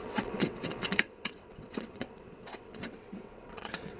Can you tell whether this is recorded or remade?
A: remade